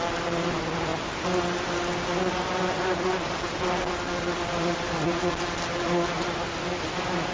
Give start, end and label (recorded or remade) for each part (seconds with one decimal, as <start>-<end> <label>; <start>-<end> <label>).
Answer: 0.0-7.3 recorded

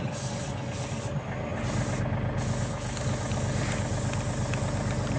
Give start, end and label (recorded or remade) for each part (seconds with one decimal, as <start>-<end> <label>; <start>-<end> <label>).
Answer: 0.0-5.2 recorded

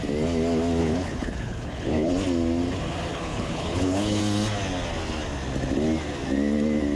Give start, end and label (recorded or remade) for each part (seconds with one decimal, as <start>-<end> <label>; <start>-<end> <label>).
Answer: 0.0-0.8 recorded; 0.8-2.1 remade; 2.1-3.1 recorded; 3.1-4.2 remade; 4.2-7.0 recorded

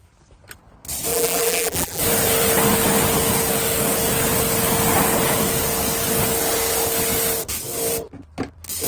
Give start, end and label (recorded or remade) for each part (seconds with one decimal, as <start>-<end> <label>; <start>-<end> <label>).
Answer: 0.0-1.1 recorded; 1.1-2.0 remade; 2.0-8.9 recorded

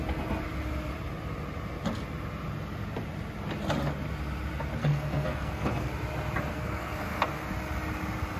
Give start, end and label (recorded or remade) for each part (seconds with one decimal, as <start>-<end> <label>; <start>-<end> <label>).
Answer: 0.0-4.8 recorded; 4.8-5.9 remade; 5.9-6.5 recorded; 6.5-7.3 remade; 7.3-8.4 recorded

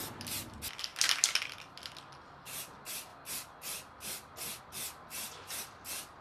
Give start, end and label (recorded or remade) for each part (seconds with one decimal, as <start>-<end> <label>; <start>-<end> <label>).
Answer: 0.0-6.2 recorded

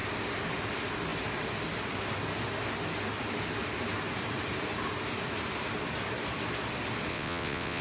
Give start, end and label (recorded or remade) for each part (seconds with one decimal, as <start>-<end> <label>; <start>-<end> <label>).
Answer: 0.0-7.1 recorded; 7.1-7.8 remade